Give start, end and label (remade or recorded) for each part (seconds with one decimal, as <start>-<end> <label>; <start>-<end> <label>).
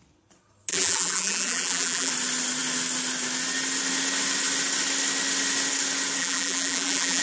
0.0-0.7 recorded; 0.7-2.1 remade; 2.1-6.2 recorded; 6.2-7.2 remade